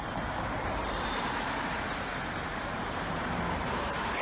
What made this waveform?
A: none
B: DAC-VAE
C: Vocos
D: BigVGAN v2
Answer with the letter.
D